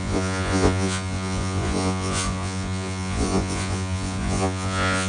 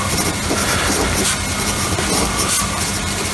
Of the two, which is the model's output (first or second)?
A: first